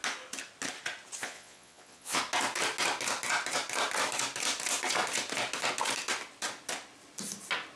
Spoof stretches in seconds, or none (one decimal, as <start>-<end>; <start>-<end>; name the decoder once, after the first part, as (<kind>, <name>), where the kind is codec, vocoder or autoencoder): 1.2-2.2 (vocoder, Vocos)